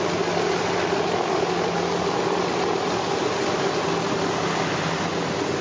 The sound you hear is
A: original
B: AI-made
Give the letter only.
A